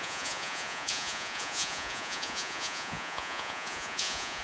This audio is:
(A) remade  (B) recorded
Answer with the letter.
A